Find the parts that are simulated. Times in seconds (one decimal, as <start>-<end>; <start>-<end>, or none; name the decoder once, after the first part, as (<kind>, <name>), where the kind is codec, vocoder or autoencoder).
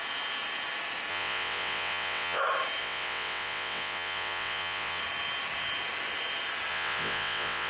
1.1-2.4 (vocoder, WaveNeXt); 2.8-5.0; 6.7-7.7